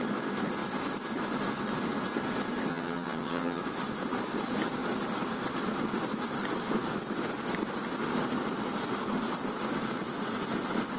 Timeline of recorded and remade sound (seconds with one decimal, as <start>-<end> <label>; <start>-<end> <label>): 0.0-2.7 recorded; 2.7-3.6 remade; 3.6-11.0 recorded